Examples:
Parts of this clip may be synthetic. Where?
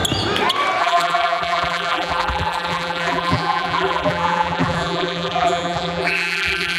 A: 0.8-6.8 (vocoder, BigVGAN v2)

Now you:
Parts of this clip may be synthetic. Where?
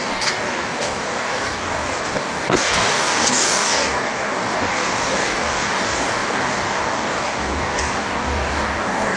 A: 0.0-9.2 (codec, DAC)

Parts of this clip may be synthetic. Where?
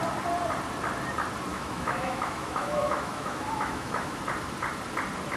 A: 1.5-4.2 (autoencoder, DAC-VAE)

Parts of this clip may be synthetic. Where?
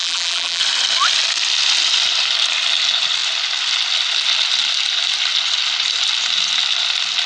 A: 0.0-0.6 (vocoder, BigVGAN v2)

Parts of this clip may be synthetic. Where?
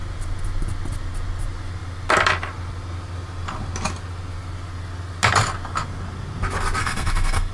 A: 6.8-7.5 (codec, SNAC)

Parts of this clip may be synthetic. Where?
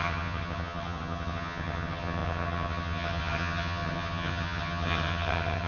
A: 0.0-5.7 (vocoder, HiFi-GAN)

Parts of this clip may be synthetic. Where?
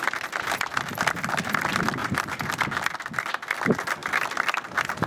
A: 2.0-2.5 (vocoder, BigVGAN v2)